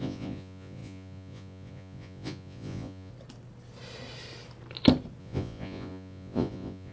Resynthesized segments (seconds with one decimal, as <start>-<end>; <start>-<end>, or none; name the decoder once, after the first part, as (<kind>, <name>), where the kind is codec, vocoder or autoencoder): 0.0-3.1 (vocoder, Vocos); 5.2-6.9